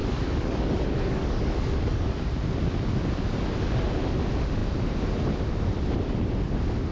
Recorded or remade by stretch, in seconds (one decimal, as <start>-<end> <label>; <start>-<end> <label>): 0.0-2.1 remade; 2.1-6.9 recorded